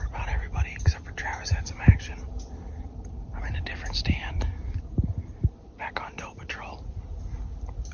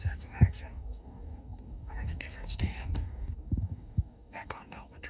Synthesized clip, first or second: second